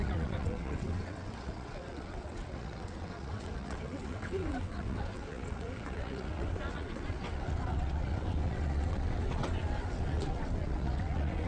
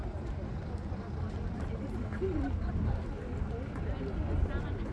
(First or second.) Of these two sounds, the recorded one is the second